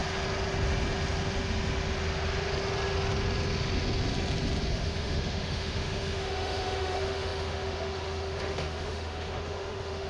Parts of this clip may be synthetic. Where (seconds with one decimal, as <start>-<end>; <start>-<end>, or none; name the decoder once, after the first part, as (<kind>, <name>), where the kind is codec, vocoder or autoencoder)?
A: 4.7-10.1 (autoencoder, DAC-VAE)